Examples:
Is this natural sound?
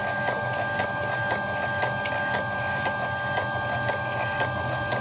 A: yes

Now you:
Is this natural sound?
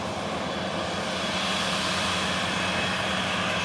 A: yes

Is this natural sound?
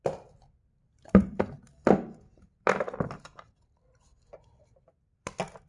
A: yes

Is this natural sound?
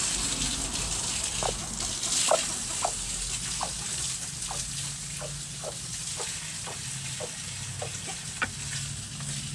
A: yes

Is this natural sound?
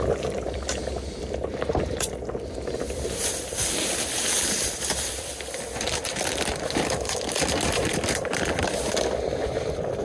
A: no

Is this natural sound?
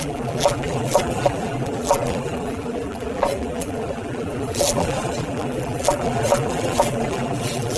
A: no